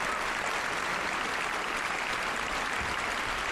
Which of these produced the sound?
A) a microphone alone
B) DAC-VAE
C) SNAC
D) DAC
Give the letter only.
A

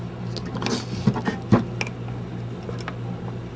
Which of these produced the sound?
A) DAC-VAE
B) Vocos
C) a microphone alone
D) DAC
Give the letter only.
C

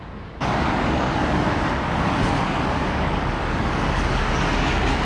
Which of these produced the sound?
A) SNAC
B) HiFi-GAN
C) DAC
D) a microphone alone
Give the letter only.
C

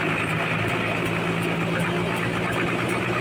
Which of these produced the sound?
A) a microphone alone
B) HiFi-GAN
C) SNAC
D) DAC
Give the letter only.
A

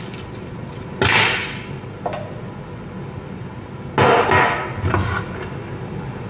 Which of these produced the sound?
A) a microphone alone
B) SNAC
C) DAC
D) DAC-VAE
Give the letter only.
A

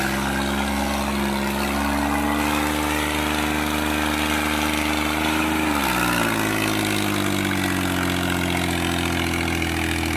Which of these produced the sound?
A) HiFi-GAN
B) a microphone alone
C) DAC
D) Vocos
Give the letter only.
B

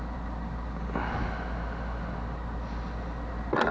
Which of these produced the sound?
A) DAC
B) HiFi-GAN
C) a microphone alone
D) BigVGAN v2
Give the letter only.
C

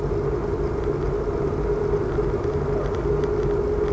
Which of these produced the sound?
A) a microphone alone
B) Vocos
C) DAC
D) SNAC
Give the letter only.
A